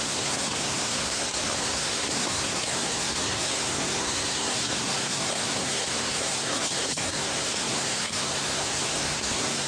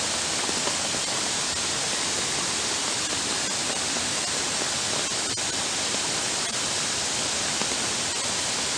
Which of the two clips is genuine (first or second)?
second